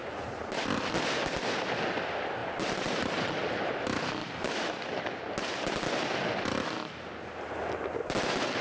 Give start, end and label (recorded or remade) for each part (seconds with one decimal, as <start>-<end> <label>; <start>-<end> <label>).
0.0-0.7 remade; 0.7-2.4 recorded; 2.4-3.0 remade; 3.0-8.6 recorded